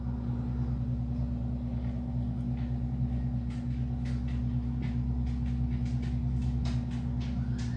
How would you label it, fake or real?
real